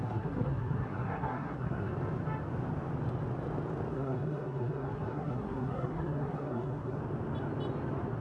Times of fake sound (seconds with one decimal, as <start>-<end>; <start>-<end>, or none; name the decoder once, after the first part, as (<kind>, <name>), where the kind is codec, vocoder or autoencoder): 0.0-1.9 (codec, SNAC); 3.9-7.0